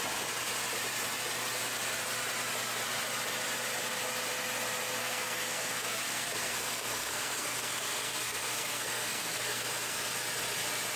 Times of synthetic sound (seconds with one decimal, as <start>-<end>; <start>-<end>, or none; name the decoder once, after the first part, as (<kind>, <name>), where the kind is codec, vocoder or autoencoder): 5.0-10.1 (codec, SNAC)

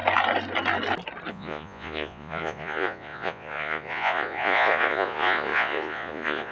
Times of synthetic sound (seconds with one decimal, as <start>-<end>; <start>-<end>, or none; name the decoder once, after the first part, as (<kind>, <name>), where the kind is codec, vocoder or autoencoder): 1.3-6.5 (vocoder, Vocos)

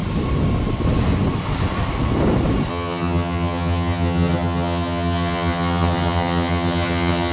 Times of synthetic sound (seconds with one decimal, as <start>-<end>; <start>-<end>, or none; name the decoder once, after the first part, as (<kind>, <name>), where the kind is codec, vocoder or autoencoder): 2.7-7.3 (vocoder, HiFi-GAN)

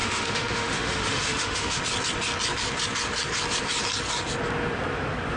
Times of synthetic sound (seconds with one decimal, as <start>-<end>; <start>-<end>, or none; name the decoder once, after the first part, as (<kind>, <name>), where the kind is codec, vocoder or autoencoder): 0.0-1.8 (autoencoder, DAC-VAE)

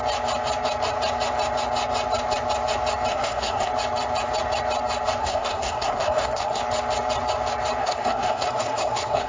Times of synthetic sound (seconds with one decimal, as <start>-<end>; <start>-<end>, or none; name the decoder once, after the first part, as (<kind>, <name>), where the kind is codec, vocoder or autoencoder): 3.1-3.7 (codec, SNAC); 5.2-6.6; 7.8-9.3